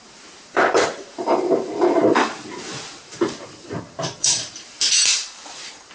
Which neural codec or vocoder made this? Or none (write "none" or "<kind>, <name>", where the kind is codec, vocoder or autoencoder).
vocoder, BigVGAN v2